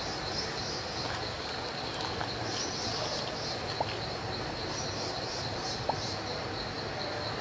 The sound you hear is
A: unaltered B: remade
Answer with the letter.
A